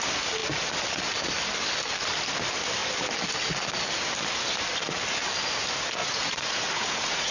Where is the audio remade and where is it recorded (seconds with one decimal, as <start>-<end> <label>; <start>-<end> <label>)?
0.0-6.0 recorded; 6.0-7.3 remade